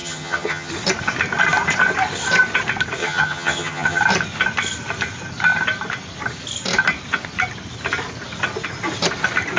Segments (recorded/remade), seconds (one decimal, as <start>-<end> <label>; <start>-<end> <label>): 0.0-0.7 remade; 0.7-3.0 recorded; 3.0-4.0 remade; 4.0-9.6 recorded